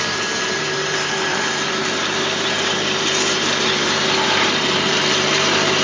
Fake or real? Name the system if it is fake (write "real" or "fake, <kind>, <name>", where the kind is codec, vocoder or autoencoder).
fake, vocoder, BigVGAN v2